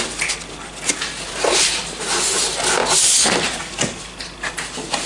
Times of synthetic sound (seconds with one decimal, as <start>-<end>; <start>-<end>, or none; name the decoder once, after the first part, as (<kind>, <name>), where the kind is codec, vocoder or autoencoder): none